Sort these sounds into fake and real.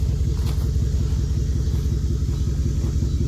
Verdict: real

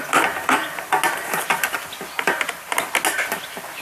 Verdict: real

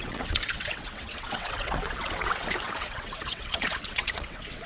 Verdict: fake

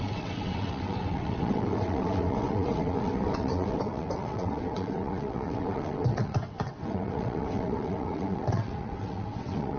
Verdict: fake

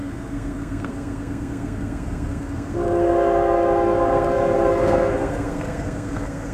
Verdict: fake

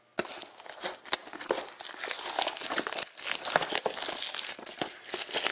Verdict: real